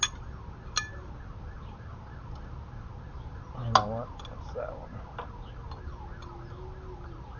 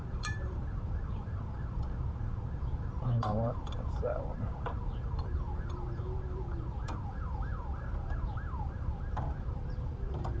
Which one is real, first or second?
first